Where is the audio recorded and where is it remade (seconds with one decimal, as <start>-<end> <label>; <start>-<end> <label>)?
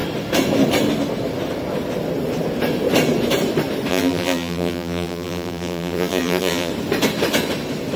0.0-3.9 recorded; 3.9-6.7 remade; 6.7-8.0 recorded